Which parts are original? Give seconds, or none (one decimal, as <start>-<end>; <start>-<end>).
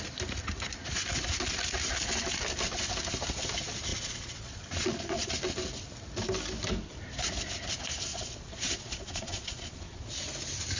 0.0-3.9; 5.3-8.1; 10.1-10.8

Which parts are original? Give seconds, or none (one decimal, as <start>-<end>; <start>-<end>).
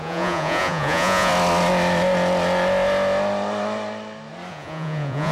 1.3-4.5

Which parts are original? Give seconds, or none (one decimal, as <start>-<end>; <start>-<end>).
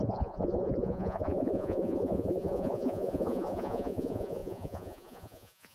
none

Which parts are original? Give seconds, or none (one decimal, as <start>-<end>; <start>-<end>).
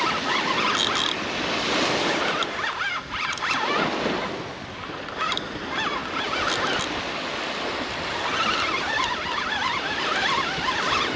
0.0-11.2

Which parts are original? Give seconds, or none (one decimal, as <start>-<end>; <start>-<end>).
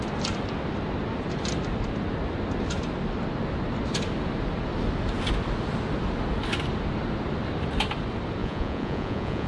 0.0-8.4